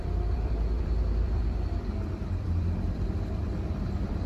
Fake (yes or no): yes